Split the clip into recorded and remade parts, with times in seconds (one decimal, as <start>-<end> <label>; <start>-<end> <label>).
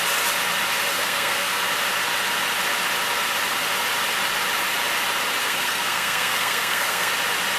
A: 0.0-0.9 recorded; 0.9-1.6 remade; 1.6-5.4 recorded; 5.4-7.1 remade; 7.1-7.6 recorded